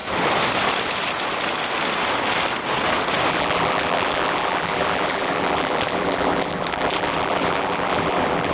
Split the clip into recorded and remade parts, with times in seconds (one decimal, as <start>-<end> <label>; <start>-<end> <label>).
0.0-3.3 recorded; 3.3-8.5 remade